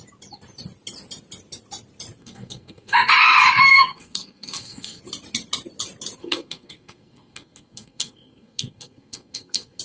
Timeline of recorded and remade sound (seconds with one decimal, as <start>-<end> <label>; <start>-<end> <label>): 0.0-2.2 recorded; 2.2-3.1 remade; 3.1-3.7 recorded; 3.7-5.0 remade; 5.0-6.2 recorded; 6.2-9.8 remade